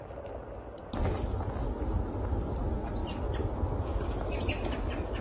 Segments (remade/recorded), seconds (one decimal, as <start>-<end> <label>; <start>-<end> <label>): 0.0-5.2 recorded